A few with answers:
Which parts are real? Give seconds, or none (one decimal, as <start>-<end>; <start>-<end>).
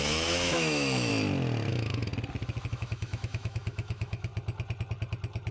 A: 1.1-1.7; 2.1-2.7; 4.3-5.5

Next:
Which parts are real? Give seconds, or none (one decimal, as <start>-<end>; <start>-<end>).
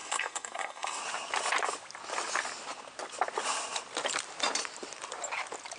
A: 1.0-5.8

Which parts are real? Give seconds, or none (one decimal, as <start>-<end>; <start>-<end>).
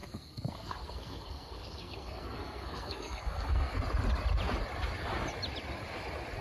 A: 3.8-6.4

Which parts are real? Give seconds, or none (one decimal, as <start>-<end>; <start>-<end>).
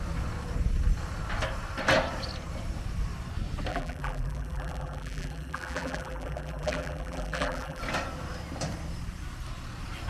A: 0.0-3.7; 7.8-10.1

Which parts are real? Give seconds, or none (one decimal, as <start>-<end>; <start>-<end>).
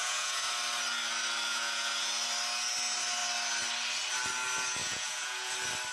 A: 0.5-1.5; 2.1-4.8; 5.5-5.9